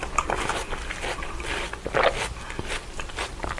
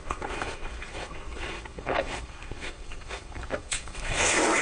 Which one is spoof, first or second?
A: second